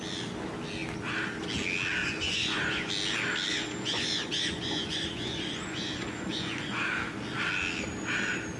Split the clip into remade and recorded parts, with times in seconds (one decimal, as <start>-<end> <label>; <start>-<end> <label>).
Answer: 0.0-2.0 recorded; 2.0-2.9 remade; 2.9-3.5 recorded; 3.5-7.1 remade; 7.1-8.6 recorded